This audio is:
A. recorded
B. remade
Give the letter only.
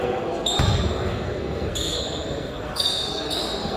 B